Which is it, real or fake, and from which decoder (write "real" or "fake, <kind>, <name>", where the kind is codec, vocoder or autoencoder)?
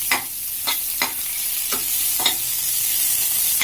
real